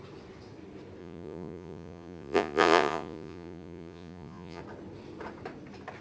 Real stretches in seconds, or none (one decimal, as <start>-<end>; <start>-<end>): 0.0-1.0; 4.6-6.0